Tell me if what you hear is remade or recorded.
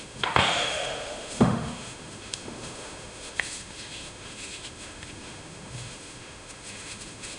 remade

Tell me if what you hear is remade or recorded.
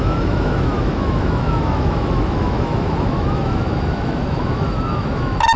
remade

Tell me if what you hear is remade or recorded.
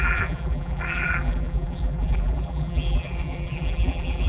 remade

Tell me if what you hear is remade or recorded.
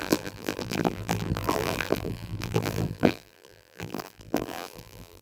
remade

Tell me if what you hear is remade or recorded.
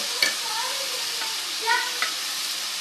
recorded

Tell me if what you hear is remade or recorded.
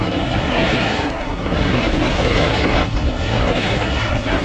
remade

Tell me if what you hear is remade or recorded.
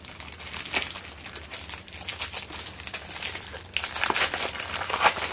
recorded